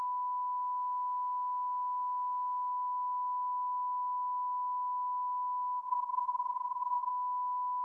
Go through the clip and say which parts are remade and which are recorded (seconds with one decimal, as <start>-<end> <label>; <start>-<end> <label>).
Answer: 0.0-5.8 recorded; 5.8-7.1 remade; 7.1-7.8 recorded